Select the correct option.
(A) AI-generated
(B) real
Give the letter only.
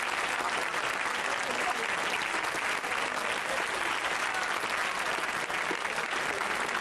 B